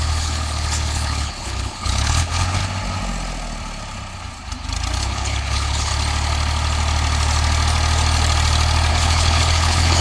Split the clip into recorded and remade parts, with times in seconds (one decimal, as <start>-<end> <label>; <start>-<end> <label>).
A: 0.0-2.6 remade; 2.6-5.0 recorded; 5.0-5.9 remade; 5.9-8.9 recorded; 8.9-10.0 remade